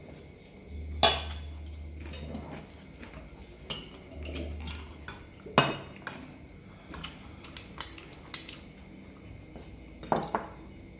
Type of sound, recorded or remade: recorded